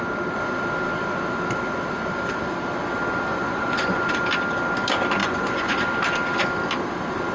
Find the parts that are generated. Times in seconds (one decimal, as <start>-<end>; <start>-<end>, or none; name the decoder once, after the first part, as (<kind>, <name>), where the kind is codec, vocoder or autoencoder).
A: 3.3-4.1 (vocoder, Vocos); 5.2-5.8